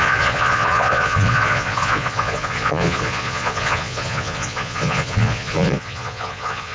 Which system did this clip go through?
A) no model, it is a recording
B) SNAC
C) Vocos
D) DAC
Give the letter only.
C